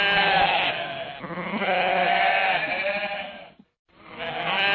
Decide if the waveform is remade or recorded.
recorded